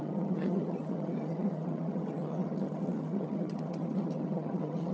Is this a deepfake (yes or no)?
yes